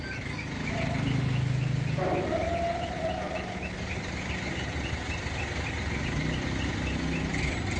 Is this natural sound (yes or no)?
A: yes